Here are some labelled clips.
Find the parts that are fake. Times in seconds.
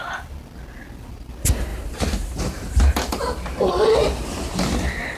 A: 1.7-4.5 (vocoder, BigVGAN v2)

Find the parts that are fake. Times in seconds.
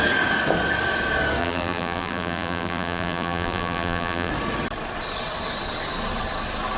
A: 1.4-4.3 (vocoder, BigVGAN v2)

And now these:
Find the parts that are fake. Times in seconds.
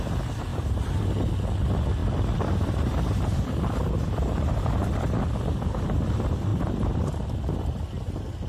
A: 2.0-4.5 (vocoder, BigVGAN v2); 6.5-7.3